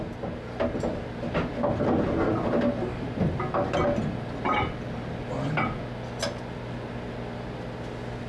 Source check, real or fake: real